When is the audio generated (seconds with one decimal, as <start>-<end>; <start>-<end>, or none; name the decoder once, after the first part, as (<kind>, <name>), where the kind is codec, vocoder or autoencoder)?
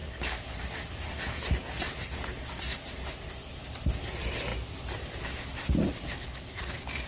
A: 3.3-7.1 (vocoder, BigVGAN v2)